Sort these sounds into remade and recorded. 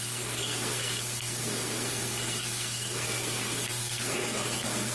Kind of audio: remade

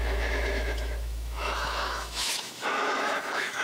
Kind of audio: remade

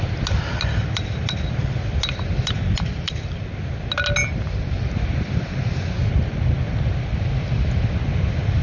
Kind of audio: recorded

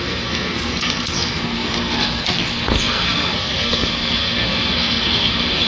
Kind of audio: remade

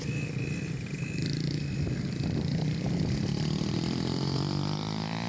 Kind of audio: remade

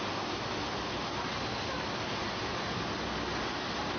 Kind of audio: recorded